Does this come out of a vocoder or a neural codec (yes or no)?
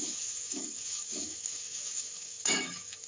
yes